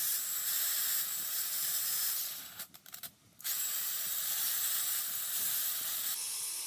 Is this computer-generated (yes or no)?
yes